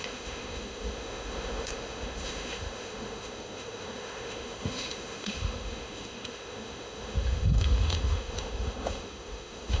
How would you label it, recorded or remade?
remade